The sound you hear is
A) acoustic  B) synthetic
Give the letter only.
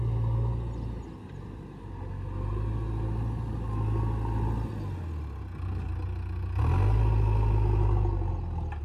A